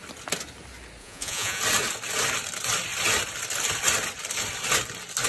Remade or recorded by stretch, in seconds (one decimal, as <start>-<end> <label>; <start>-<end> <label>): 0.0-1.0 recorded; 1.0-1.6 remade; 1.6-5.3 recorded